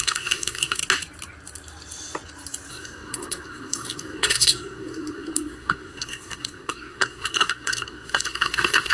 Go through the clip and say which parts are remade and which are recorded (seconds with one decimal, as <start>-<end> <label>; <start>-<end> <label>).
0.0-0.8 remade; 0.8-2.7 recorded; 2.7-8.9 remade